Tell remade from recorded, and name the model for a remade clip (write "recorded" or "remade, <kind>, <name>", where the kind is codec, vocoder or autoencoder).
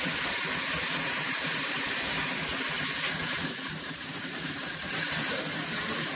remade, vocoder, BigVGAN v2